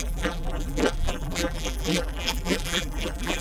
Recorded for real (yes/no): no